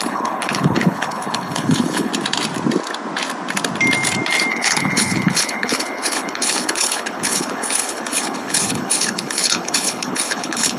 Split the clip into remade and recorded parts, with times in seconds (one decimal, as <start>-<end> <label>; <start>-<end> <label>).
0.0-2.1 remade; 2.1-4.5 recorded; 4.5-10.8 remade